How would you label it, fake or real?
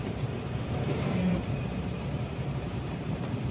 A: fake